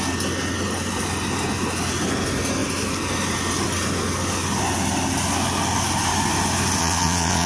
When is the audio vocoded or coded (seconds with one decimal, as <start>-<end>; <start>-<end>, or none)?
6.8-7.5